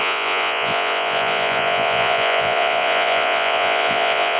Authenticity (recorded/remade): remade